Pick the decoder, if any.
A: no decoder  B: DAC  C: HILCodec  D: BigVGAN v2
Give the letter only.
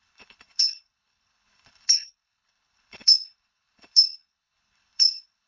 C